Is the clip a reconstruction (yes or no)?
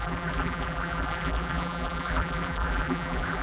yes